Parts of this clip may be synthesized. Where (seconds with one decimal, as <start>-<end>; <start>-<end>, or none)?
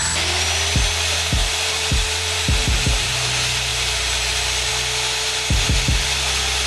1.4-3.1; 3.7-4.7